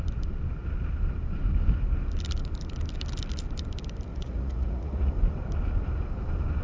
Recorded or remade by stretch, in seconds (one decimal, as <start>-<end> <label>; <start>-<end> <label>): 0.0-4.1 recorded; 4.1-5.1 remade; 5.1-6.6 recorded